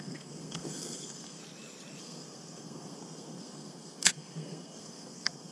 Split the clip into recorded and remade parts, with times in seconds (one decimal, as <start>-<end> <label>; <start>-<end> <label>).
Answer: 0.0-1.4 remade; 1.4-2.0 recorded; 2.0-5.5 remade